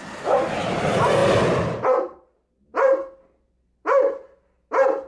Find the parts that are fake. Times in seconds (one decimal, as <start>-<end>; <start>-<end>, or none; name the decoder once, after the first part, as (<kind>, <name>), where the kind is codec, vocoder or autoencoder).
none